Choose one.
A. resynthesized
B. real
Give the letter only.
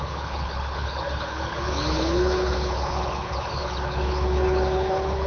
A